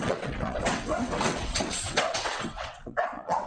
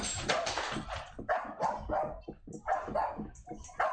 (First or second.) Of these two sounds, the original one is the second